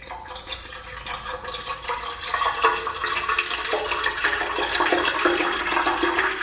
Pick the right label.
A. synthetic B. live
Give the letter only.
B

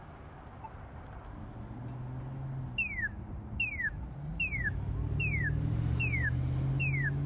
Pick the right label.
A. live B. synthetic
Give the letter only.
A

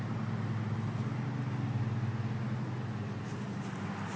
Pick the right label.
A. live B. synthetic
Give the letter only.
A